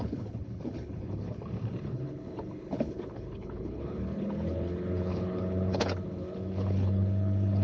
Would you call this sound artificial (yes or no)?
yes